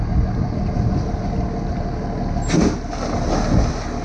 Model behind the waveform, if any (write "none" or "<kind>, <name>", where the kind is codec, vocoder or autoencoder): none